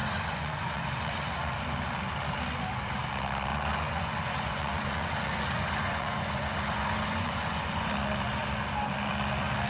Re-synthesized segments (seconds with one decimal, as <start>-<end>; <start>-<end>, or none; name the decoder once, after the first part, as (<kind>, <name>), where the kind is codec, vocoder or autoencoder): 0.0-1.5 (vocoder, Vocos); 3.5-7.9